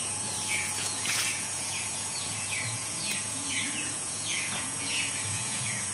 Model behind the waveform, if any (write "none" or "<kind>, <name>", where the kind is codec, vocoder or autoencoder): vocoder, Vocos